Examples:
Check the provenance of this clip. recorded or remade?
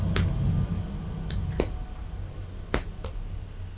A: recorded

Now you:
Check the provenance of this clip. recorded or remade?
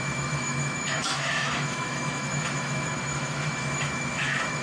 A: remade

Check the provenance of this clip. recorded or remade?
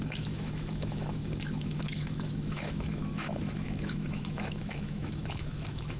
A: remade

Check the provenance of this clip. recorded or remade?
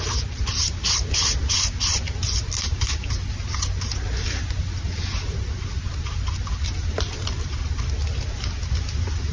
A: recorded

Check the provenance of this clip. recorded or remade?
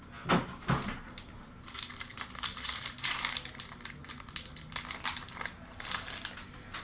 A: recorded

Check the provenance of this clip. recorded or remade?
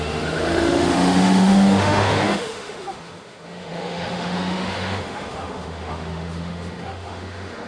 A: remade